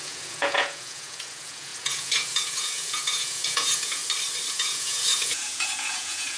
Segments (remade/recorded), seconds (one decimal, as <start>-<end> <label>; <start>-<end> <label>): 0.0-4.0 remade; 4.0-4.5 recorded; 4.5-6.4 remade